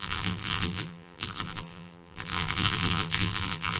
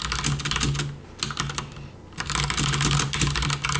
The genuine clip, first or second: second